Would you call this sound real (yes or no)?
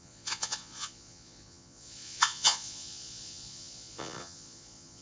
no